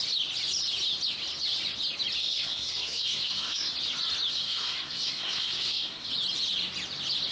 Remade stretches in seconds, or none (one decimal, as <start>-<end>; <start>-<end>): 2.2-3.7; 4.3-6.1